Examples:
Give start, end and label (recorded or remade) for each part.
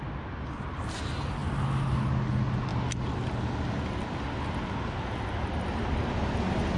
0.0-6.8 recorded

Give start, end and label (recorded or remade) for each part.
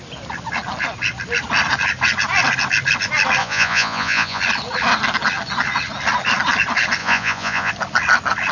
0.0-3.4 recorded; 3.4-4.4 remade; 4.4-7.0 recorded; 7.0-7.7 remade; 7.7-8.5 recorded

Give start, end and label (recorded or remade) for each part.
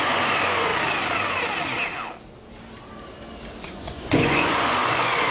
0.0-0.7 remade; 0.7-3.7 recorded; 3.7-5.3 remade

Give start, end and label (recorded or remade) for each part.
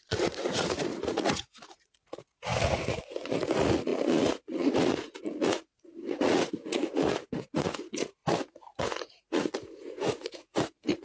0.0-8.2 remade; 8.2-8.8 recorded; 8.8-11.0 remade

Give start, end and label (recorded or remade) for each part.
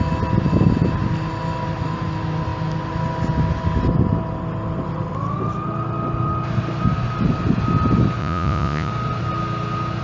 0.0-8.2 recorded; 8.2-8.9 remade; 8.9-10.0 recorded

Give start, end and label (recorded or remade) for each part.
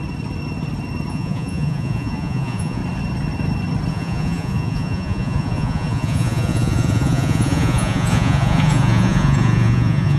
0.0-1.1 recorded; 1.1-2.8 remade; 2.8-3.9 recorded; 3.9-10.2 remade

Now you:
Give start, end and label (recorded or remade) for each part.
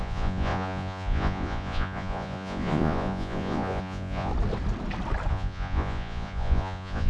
0.0-4.3 remade; 4.3-5.3 recorded; 5.3-7.1 remade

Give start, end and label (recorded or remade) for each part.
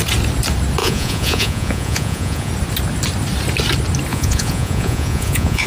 0.0-0.8 recorded; 0.8-2.5 remade; 2.5-4.1 recorded; 4.1-5.7 remade